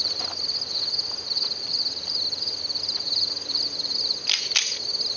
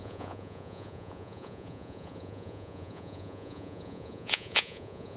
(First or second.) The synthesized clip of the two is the second